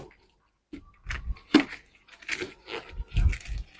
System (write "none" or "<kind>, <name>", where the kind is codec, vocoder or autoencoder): none